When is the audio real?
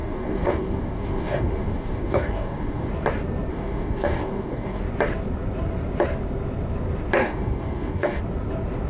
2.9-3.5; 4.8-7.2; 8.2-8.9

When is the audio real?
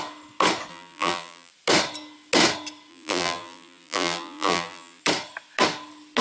0.0-0.7; 1.5-2.9; 5.0-6.2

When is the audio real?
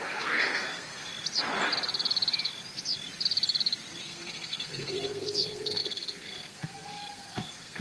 1.1-4.0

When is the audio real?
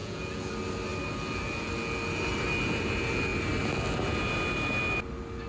0.5-5.5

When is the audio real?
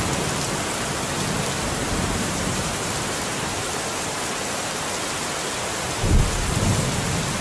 0.0-1.8; 4.2-7.4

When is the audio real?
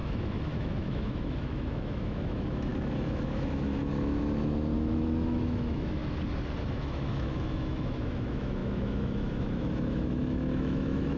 6.0-6.7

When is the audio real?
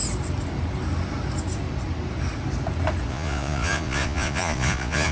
0.0-3.1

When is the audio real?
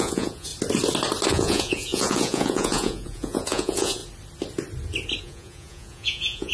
0.5-1.3; 4.0-5.2